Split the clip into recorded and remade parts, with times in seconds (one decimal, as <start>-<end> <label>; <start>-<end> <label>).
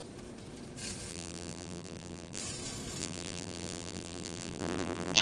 0.0-1.1 recorded; 1.1-2.4 remade; 2.4-3.0 recorded; 3.0-5.2 remade